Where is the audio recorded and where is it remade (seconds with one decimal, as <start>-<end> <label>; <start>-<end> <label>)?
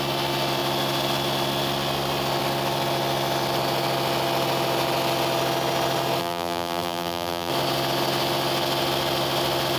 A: 0.0-6.2 recorded; 6.2-7.5 remade; 7.5-9.8 recorded